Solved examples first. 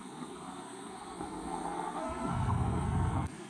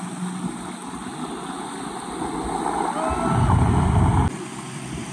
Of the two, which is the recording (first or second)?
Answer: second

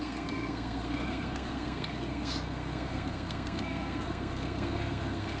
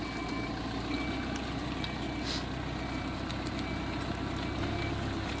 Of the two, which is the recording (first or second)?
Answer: second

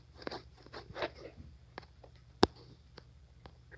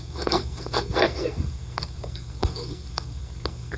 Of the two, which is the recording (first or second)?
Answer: first